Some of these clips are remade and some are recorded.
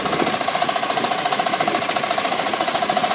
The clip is remade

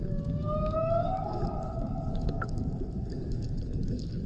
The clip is remade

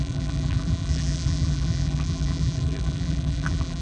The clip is remade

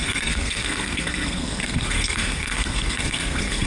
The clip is remade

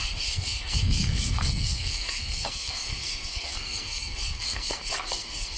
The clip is remade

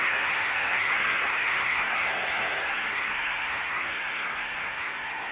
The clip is remade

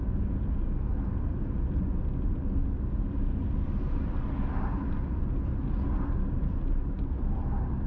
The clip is recorded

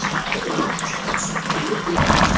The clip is recorded